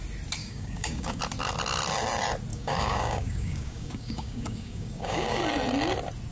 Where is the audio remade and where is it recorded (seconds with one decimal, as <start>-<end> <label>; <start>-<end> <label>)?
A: 0.0-0.4 recorded; 0.4-1.2 remade; 1.2-2.5 recorded; 2.5-5.4 remade; 5.4-6.3 recorded